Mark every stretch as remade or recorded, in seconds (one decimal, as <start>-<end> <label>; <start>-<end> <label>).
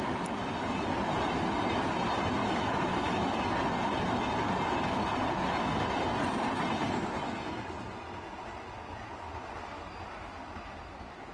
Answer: 0.0-2.4 recorded; 2.4-3.3 remade; 3.3-11.3 recorded